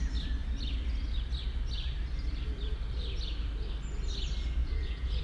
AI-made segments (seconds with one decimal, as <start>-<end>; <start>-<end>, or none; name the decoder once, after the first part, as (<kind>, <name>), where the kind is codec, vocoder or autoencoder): 4.6-5.2 (vocoder, Vocos)